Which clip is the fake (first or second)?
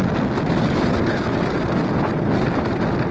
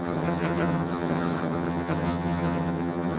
second